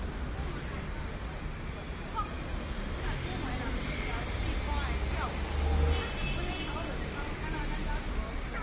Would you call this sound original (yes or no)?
yes